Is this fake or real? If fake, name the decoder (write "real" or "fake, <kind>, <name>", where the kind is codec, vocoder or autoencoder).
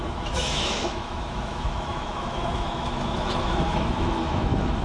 fake, autoencoder, DAC-VAE